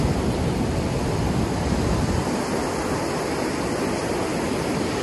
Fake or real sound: real